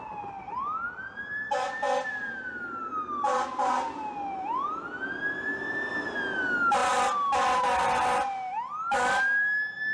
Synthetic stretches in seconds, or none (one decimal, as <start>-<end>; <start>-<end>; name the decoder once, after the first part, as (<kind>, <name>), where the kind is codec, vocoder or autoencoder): none